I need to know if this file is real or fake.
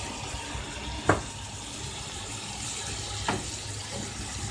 real